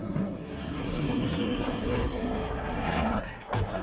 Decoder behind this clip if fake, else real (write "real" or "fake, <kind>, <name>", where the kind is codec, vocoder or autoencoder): fake, codec, SNAC